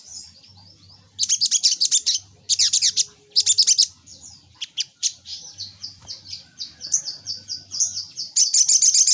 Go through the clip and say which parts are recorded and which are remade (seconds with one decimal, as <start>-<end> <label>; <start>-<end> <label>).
0.0-4.1 recorded; 4.1-8.4 remade; 8.4-9.1 recorded